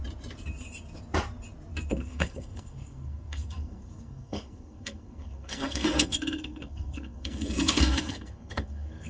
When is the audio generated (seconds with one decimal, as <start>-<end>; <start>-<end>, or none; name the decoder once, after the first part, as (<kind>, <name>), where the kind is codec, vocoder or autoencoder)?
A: 1.9-9.1 (codec, SNAC)